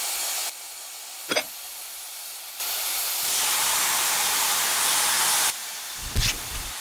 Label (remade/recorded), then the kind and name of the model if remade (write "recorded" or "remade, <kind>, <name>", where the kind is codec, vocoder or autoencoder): recorded